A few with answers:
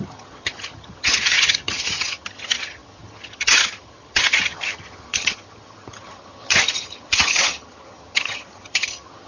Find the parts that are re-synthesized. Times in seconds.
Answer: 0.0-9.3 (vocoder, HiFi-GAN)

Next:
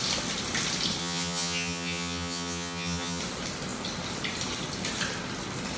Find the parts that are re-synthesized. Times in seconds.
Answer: 1.0-3.2 (vocoder, HiFi-GAN)

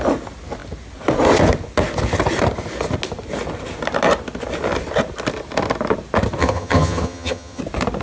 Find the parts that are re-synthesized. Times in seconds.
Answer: 6.4-7.6 (vocoder, HiFi-GAN)

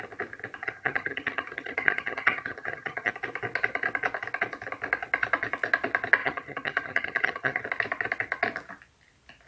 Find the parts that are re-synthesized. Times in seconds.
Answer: 0.6-3.1 (vocoder, HiFi-GAN); 6.2-7.6